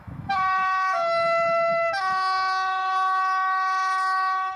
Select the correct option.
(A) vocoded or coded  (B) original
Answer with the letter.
A